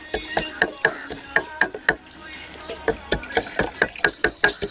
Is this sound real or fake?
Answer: real